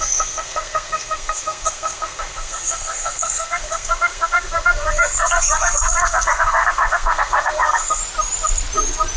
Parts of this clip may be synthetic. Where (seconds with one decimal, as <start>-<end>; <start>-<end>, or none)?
0.0-8.0